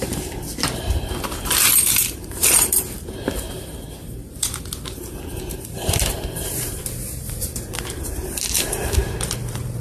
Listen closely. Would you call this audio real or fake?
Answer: fake